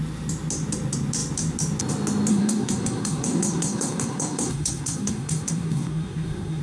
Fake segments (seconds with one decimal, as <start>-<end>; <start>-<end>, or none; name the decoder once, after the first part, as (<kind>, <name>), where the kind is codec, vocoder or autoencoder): 2.3-6.6 (codec, SNAC)